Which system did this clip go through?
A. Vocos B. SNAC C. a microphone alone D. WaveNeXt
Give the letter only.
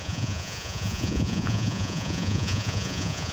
A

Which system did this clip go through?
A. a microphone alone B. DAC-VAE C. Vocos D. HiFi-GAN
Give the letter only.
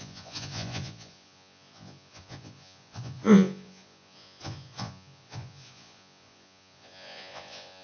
C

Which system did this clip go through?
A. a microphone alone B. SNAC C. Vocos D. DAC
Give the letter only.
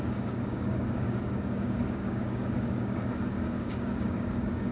D